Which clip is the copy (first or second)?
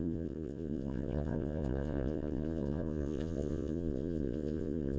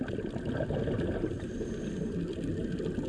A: first